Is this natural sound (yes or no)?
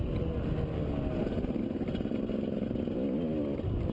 yes